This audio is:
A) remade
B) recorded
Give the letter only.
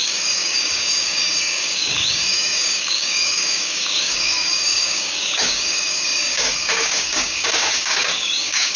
A